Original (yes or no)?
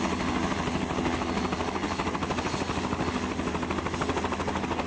yes